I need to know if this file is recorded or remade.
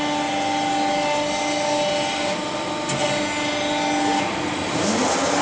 recorded